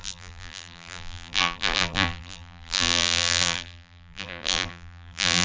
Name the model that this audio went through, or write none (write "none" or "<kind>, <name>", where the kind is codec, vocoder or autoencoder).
vocoder, BigVGAN v2